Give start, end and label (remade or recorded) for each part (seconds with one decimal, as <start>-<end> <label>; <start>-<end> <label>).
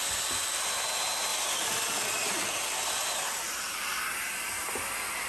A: 0.0-1.3 recorded; 1.3-4.0 remade; 4.0-5.3 recorded